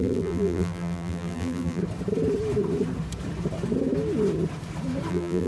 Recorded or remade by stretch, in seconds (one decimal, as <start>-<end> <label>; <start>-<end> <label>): 0.0-1.8 remade; 1.8-5.1 recorded; 5.1-5.5 remade